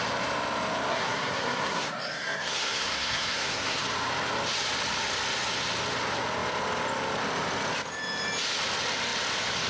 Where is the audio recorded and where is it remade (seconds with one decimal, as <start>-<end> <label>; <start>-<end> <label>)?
0.0-0.9 recorded; 0.9-3.8 remade; 3.8-9.7 recorded